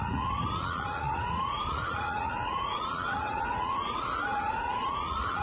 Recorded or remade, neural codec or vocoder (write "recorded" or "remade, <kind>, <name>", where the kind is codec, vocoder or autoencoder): remade, vocoder, Vocos